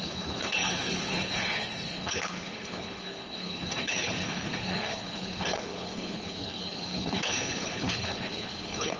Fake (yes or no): yes